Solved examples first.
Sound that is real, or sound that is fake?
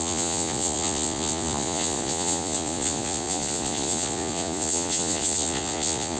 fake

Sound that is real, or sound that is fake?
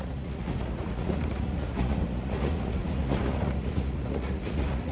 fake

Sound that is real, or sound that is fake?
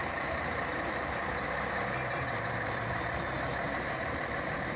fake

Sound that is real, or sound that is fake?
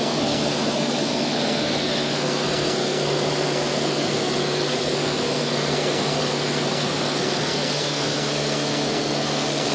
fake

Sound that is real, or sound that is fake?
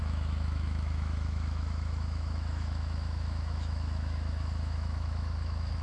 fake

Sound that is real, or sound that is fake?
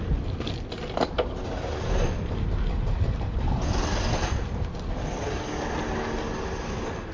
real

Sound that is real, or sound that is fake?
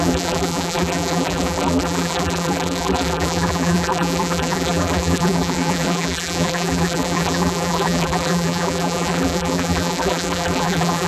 fake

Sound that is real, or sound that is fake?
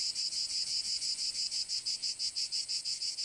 fake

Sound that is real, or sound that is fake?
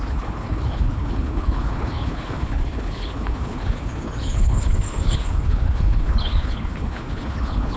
fake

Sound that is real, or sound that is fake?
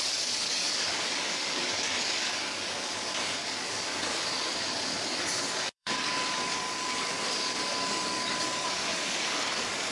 fake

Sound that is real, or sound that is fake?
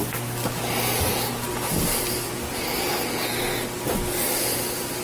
real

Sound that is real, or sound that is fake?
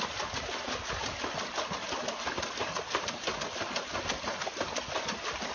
real